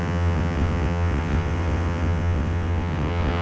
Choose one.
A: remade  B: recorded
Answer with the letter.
A